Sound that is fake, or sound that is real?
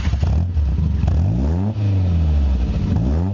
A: real